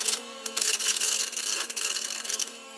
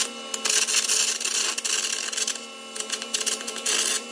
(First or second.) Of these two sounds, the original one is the second